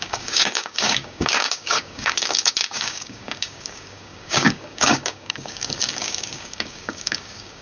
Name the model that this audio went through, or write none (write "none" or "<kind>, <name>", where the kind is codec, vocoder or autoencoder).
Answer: codec, DAC